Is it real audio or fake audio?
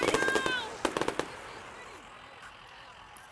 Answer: real